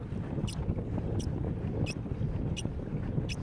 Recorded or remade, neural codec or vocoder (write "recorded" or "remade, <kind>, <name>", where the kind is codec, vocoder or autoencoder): recorded